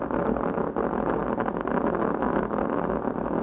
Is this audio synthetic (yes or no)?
no